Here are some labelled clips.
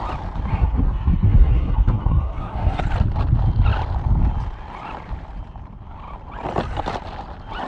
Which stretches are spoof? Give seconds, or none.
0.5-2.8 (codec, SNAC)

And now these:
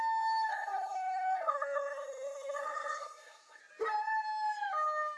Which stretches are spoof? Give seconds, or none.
0.5-3.6 (codec, SNAC)

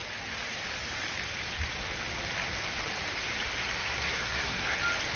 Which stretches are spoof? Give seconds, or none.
3.8-4.8 (codec, SNAC)

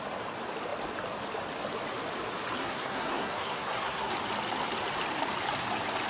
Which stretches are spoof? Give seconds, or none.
2.6-4.1 (codec, SNAC)

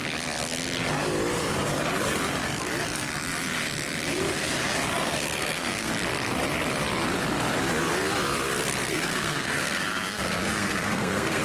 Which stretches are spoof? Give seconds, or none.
5.0-5.9 (codec, SNAC); 8.9-11.4